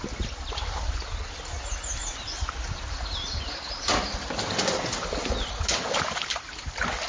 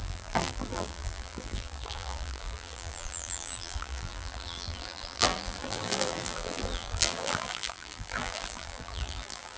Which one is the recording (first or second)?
first